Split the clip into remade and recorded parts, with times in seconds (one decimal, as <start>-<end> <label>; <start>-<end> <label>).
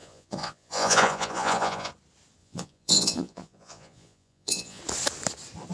0.0-1.9 remade; 1.9-2.4 recorded; 2.4-4.8 remade; 4.8-5.7 recorded